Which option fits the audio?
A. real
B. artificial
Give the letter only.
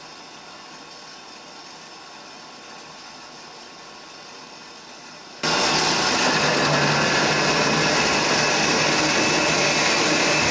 A